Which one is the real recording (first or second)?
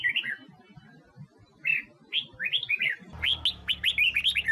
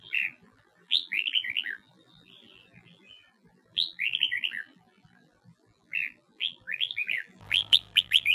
first